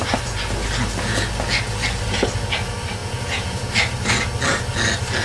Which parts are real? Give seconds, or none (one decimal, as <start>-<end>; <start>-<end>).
0.0-3.0; 3.7-5.2